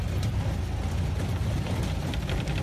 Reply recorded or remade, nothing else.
recorded